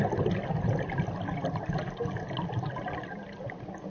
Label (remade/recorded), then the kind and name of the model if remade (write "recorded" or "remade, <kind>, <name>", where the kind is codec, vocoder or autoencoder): recorded